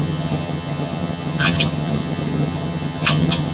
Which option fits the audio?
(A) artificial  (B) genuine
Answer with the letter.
A